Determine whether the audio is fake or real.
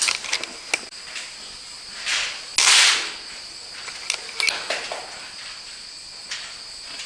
real